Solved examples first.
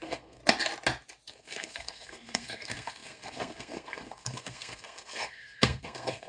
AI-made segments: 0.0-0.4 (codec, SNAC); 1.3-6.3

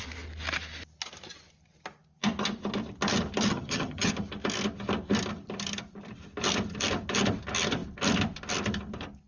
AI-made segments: 3.5-4.1 (vocoder, HiFi-GAN)

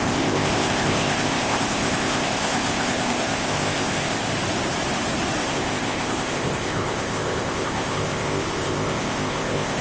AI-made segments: 0.0-4.3 (codec, ZipCodec); 5.4-9.8

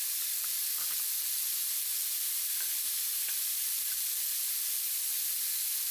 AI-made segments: none

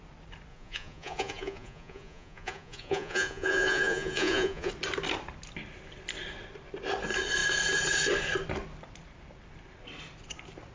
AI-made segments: 0.5-4.7 (vocoder, Vocos)